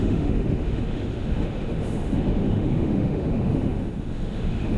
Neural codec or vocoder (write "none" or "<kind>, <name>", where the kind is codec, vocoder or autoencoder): autoencoder, DAC-VAE